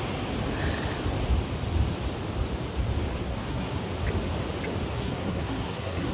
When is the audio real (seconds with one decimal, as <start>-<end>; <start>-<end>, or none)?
0.0-3.2; 3.8-4.9